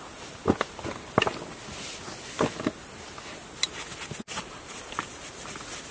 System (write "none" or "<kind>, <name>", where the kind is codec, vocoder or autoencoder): none